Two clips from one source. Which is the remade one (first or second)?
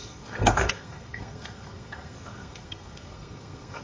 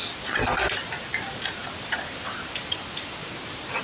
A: first